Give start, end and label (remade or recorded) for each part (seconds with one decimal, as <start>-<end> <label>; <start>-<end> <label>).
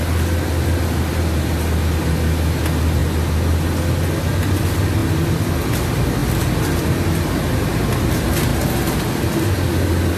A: 0.0-8.5 recorded; 8.5-9.1 remade; 9.1-10.2 recorded